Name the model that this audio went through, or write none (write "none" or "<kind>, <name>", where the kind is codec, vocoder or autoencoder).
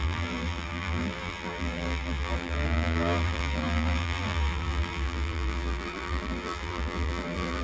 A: vocoder, BigVGAN v2